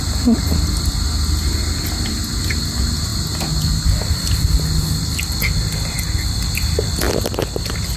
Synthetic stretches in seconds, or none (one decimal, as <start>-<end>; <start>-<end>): none